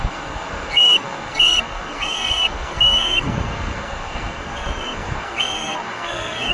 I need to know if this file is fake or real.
fake